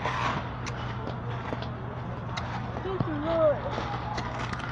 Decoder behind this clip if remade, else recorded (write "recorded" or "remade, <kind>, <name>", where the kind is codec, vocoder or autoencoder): recorded